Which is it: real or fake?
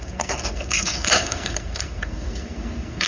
fake